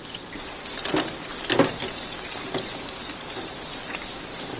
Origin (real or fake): real